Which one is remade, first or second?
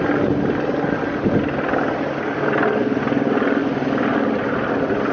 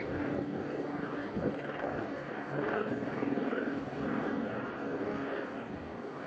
second